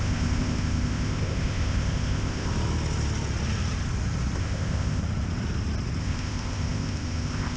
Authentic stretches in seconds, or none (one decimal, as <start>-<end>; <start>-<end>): 2.5-4.4; 5.0-6.0